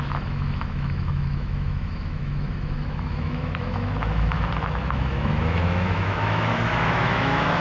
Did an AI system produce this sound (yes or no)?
yes